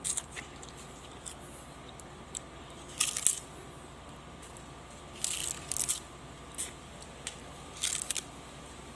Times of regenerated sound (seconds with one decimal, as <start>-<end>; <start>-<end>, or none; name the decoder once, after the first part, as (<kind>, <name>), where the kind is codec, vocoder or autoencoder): none